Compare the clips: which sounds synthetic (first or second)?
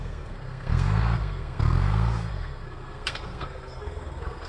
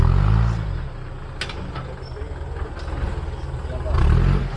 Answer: first